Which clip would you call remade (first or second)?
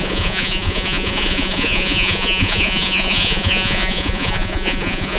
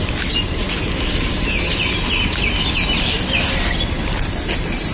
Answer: first